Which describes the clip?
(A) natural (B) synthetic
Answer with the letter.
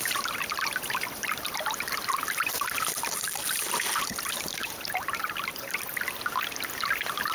A